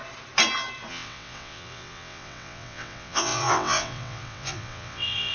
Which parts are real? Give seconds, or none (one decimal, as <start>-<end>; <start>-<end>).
0.0-0.9